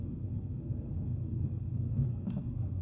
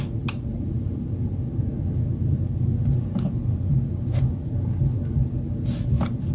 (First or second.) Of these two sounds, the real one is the second